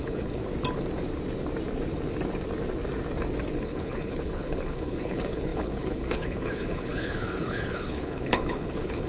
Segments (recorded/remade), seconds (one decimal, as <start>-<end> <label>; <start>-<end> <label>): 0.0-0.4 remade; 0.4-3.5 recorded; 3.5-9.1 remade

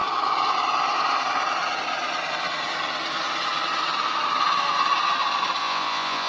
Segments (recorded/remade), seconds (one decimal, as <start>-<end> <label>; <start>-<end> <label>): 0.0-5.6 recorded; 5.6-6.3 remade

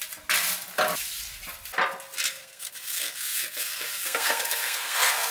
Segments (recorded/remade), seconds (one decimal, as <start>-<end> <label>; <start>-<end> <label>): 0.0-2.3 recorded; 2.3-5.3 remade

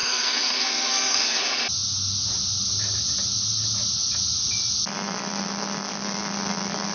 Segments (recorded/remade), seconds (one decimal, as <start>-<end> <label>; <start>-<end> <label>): 0.0-1.4 remade; 1.4-6.9 recorded